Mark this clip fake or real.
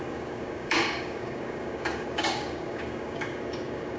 fake